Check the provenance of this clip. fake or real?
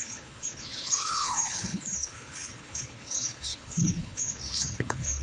fake